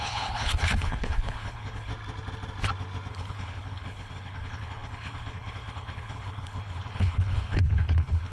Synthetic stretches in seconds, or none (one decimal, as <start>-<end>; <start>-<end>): 0.0-1.9; 3.1-8.3